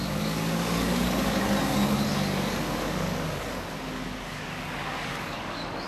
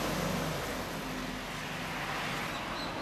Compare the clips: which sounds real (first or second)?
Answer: second